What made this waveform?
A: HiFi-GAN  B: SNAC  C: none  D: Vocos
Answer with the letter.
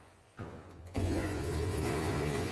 D